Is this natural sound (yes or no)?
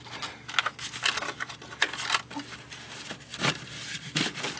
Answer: yes